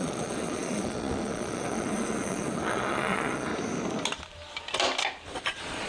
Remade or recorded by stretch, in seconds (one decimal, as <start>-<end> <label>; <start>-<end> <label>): 0.0-3.5 remade; 3.5-5.3 recorded; 5.3-5.9 remade